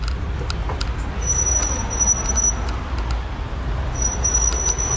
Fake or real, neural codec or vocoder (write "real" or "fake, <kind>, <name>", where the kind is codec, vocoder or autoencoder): real